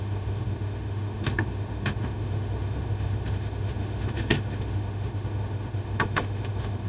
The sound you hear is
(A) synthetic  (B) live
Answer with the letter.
A